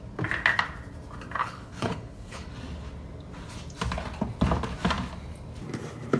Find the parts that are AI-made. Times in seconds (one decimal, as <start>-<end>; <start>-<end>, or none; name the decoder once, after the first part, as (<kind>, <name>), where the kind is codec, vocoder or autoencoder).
1.4-2.5 (codec, HILCodec)